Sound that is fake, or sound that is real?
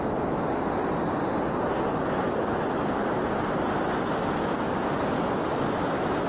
real